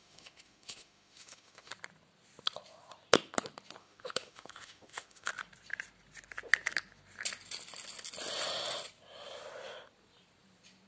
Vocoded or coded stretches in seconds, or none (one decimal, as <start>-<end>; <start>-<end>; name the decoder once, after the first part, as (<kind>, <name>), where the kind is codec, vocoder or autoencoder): 0.0-1.7 (autoencoder, DAC-VAE); 3.8-5.3